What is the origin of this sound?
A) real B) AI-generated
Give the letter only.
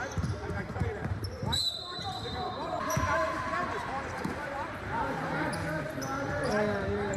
B